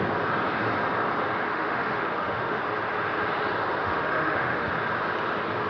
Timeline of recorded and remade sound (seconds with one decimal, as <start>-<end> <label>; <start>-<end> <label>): 0.0-1.5 recorded; 1.5-2.6 remade; 2.6-3.8 recorded; 3.8-4.7 remade; 4.7-5.7 recorded